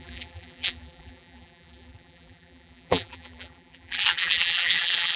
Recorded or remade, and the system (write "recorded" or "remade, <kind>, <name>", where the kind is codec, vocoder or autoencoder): remade, vocoder, BigVGAN v2